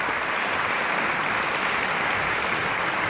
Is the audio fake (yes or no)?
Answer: no